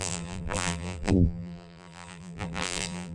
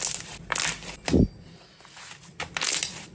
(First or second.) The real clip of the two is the second